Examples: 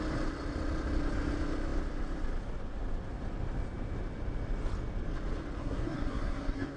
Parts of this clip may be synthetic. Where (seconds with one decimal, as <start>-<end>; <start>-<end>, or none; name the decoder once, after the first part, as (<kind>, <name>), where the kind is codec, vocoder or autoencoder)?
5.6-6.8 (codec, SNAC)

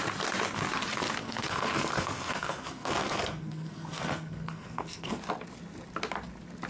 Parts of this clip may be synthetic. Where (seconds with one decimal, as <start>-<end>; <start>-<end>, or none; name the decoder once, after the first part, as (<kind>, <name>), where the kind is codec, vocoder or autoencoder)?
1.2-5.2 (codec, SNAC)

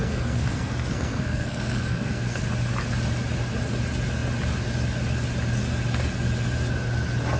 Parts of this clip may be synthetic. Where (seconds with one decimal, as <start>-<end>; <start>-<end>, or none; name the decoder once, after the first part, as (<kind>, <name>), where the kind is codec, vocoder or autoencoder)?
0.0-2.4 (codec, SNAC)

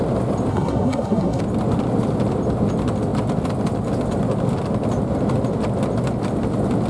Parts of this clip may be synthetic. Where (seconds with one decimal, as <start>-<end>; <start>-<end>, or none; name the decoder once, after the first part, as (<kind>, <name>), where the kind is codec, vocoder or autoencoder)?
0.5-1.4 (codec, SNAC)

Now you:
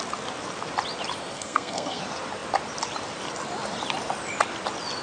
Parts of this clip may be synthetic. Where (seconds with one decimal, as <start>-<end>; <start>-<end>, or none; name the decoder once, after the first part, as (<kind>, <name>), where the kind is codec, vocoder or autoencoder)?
1.2-2.0 (codec, SNAC)